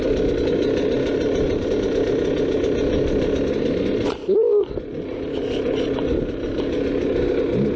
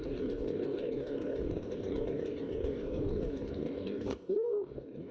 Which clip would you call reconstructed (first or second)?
second